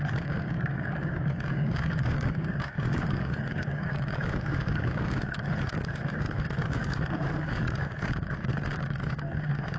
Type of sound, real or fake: fake